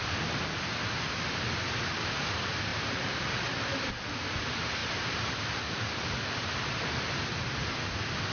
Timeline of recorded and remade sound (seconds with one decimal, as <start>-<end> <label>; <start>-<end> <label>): 0.0-2.7 recorded; 2.7-3.9 remade; 3.9-4.8 recorded; 4.8-5.8 remade; 5.8-8.3 recorded